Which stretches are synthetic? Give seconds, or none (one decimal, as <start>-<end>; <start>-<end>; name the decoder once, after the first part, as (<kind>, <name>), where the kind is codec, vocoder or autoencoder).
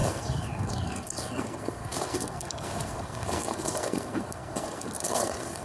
0.0-5.6 (codec, SNAC)